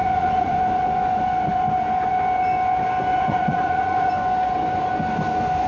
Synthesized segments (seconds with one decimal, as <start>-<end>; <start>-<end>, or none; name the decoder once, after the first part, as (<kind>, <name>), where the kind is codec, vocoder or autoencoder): 0.0-0.6 (vocoder, Vocos); 3.1-4.1